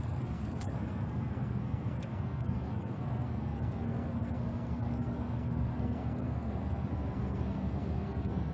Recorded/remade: remade